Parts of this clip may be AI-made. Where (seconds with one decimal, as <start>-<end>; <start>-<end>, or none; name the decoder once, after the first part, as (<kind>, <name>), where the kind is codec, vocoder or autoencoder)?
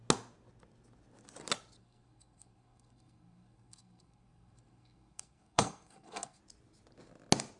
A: 1.8-6.4 (codec, SNAC)